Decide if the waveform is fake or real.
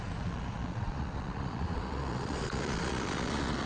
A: fake